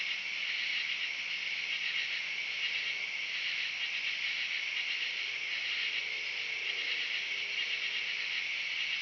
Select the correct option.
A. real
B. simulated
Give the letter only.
A